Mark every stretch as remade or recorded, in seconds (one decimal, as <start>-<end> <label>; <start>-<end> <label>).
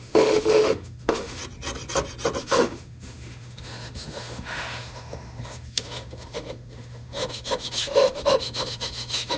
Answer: 0.0-1.4 remade; 1.4-2.4 recorded; 2.4-9.4 remade